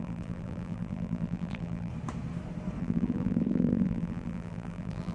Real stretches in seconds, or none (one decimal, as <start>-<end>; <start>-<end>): 1.9-2.8